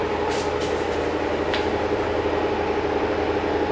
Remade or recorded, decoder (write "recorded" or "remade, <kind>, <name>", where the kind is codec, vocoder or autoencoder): recorded